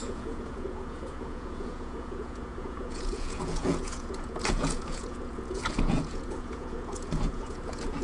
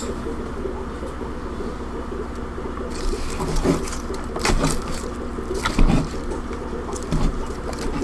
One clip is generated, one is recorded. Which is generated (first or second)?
first